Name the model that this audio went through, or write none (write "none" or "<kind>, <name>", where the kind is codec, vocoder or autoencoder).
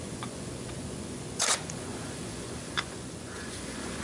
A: vocoder, Vocos